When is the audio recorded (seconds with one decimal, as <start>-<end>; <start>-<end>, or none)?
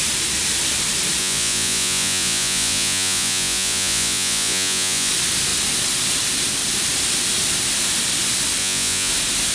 0.0-1.2; 5.1-8.6; 9.1-9.5